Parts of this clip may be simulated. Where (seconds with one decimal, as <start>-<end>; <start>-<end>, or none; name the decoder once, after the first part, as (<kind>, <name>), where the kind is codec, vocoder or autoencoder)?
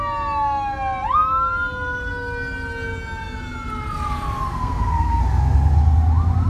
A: 4.5-5.2 (codec, SNAC)